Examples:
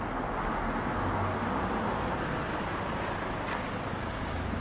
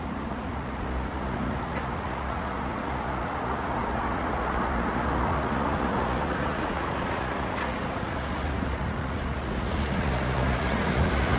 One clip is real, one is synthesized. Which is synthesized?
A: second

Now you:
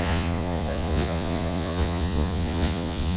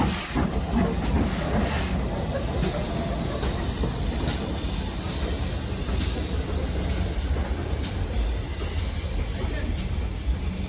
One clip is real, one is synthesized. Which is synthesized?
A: first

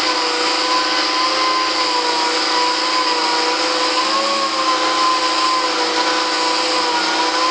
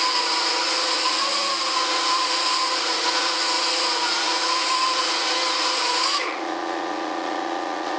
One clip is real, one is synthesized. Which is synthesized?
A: second